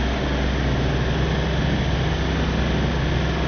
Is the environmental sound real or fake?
real